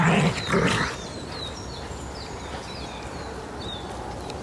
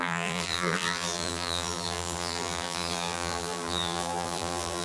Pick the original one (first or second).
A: first